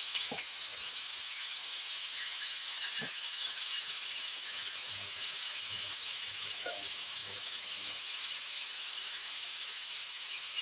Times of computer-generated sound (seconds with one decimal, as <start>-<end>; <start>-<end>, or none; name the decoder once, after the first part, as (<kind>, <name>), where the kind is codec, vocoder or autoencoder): 0.0-10.6 (autoencoder, DAC-VAE)